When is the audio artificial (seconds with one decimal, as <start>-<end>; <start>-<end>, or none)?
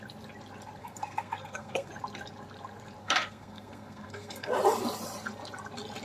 0.8-1.9; 3.0-4.5